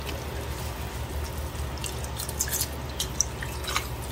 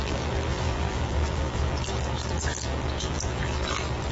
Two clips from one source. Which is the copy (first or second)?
second